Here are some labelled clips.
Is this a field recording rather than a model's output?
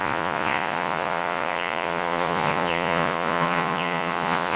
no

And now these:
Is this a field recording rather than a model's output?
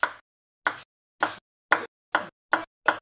yes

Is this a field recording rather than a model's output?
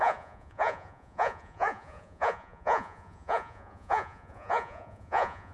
no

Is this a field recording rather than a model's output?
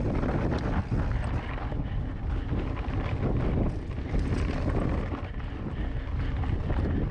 yes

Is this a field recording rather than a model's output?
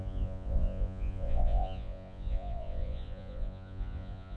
no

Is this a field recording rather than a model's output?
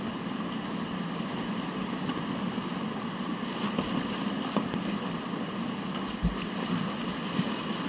yes